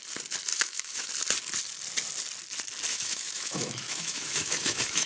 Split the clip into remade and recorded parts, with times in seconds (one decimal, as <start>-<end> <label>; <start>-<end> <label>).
0.0-0.5 recorded; 0.5-1.1 remade; 1.1-2.9 recorded; 2.9-5.1 remade